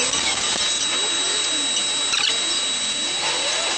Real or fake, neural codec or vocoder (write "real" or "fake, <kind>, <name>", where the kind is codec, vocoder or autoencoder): real